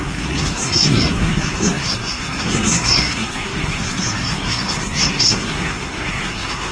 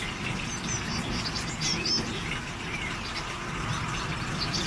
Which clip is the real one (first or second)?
second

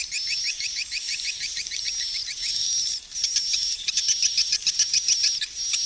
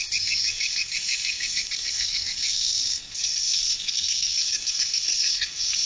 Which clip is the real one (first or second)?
first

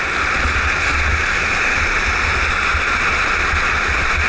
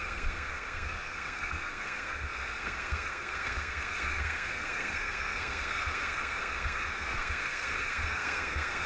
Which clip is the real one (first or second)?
first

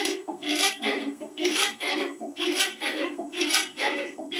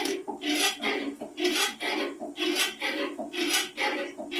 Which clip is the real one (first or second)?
second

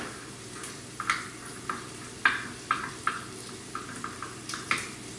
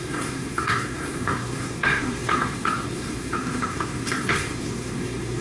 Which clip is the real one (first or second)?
first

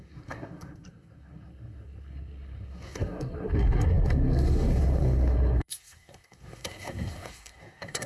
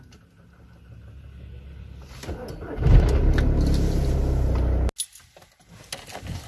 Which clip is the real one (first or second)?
second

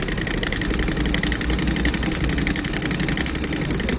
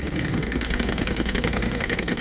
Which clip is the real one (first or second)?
first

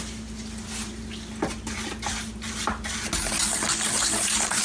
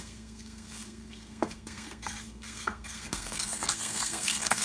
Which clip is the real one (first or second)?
first